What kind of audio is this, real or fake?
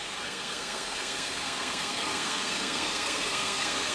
fake